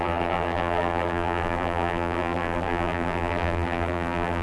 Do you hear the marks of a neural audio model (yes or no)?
yes